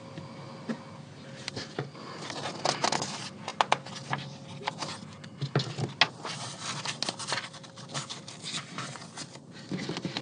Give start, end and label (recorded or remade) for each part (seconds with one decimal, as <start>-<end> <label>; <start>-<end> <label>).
0.0-10.2 recorded